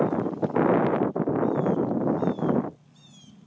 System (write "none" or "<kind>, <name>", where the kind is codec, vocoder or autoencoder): none